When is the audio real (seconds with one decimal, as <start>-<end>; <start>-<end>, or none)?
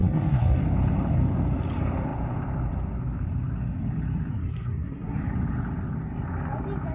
0.6-4.3; 5.2-6.9